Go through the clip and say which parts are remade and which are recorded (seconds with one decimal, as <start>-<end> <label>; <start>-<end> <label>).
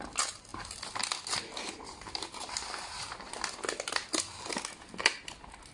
0.0-5.7 recorded